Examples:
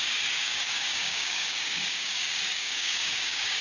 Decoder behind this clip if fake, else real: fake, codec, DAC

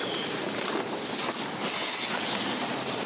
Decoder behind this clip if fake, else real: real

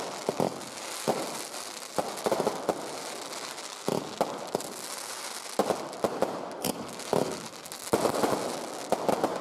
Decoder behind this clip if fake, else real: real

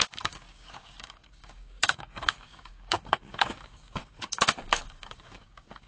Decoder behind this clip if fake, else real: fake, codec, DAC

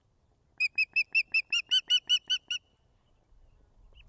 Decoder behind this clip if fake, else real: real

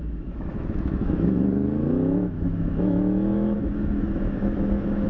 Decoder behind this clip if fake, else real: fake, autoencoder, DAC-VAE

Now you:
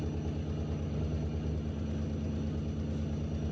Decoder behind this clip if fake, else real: real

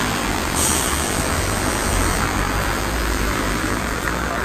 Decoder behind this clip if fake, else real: fake, vocoder, BigVGAN v2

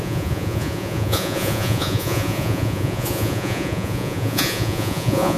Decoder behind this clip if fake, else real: fake, vocoder, Vocos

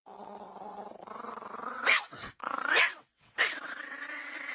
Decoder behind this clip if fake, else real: fake, vocoder, WaveNeXt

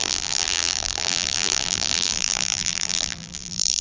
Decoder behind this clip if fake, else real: fake, vocoder, BigVGAN v2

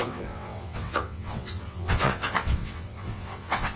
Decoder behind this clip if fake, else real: fake, vocoder, WaveNeXt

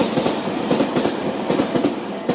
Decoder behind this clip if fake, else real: real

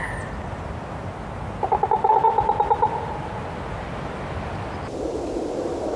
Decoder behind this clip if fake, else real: real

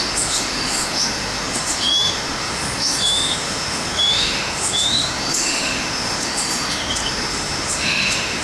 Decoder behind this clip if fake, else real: fake, autoencoder, DAC-VAE